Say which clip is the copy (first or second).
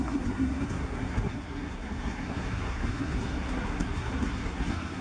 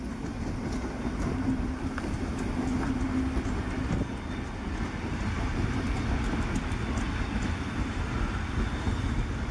first